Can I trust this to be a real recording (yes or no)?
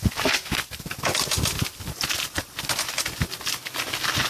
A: yes